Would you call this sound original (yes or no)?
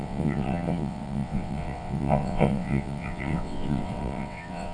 no